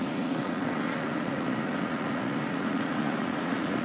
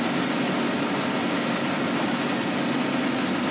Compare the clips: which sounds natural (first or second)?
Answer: second